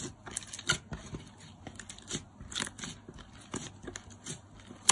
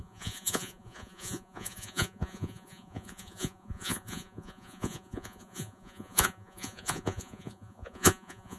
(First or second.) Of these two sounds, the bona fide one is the first